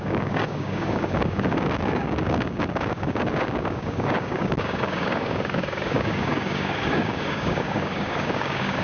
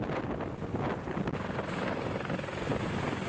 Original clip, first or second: second